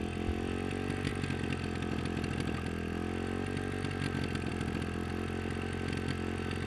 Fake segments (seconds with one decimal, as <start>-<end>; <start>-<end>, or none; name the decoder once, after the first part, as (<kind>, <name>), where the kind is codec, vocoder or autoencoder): none